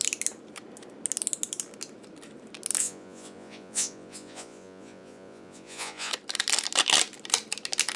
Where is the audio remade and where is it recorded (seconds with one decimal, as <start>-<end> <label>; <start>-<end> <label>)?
0.0-2.8 recorded; 2.8-6.1 remade; 6.1-8.0 recorded